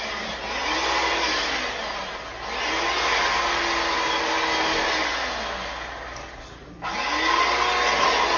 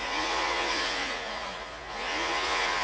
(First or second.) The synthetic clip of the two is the second